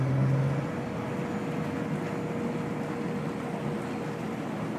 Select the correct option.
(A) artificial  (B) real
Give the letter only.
B